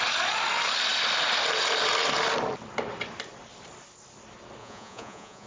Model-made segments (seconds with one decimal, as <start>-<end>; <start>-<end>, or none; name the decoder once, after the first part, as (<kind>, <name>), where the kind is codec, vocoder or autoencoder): 4.6-5.5 (vocoder, Vocos)